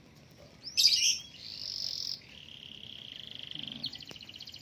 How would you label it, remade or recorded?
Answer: recorded